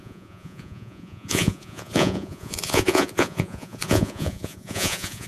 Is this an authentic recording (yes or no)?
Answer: no